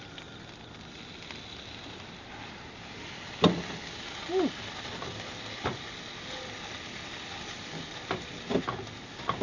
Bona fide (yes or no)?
yes